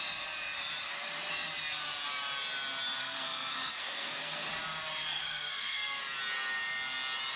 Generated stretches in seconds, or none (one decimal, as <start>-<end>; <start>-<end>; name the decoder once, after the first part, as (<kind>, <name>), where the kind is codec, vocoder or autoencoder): 3.0-4.5 (codec, SNAC); 5.1-6.0

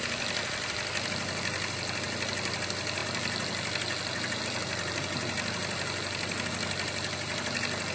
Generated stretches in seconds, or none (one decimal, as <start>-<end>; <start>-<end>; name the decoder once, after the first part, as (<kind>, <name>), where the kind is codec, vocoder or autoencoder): none

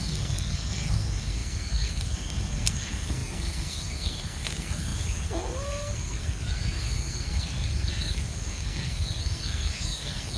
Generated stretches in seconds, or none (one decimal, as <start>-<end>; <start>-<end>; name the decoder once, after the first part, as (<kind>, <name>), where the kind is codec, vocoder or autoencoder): 0.0-10.4 (codec, SNAC)

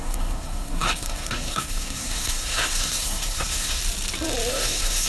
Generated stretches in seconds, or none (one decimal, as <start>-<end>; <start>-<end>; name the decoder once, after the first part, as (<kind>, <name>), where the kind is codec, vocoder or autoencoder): 0.0-3.8 (codec, SNAC); 4.5-5.1

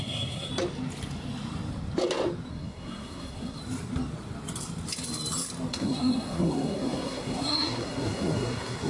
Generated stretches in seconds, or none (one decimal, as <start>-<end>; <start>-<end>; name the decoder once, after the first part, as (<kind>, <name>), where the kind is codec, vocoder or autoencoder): 0.0-0.5 (codec, SNAC); 2.5-3.6; 5.7-8.9